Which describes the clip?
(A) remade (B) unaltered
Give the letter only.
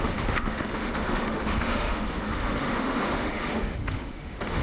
A